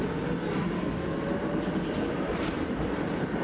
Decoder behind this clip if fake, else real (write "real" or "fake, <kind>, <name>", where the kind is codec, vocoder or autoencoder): real